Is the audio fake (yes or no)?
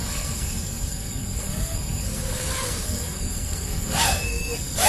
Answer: yes